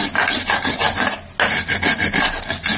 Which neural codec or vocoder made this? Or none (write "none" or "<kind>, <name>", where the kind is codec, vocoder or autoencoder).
none